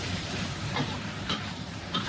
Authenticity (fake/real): fake